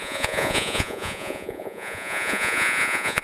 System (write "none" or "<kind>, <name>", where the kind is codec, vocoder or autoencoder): vocoder, Vocos